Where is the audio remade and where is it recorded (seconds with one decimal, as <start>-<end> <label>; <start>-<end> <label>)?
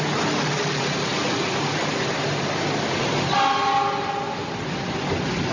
0.0-5.5 recorded